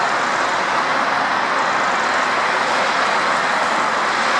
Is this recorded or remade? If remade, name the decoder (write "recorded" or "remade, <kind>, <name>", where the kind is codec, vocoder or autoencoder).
recorded